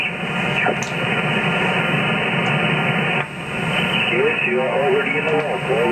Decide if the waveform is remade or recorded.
recorded